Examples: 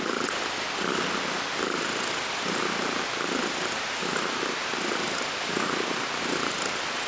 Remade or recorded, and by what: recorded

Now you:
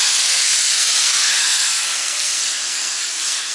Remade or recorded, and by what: remade, codec, SNAC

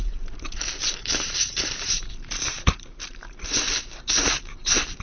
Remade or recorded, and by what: remade, vocoder, BigVGAN v2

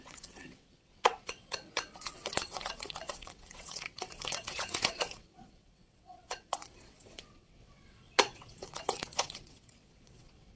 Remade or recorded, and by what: remade, vocoder, WaveNeXt